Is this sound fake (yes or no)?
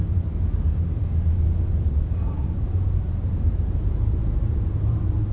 yes